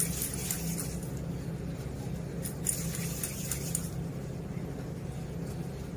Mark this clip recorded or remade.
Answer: recorded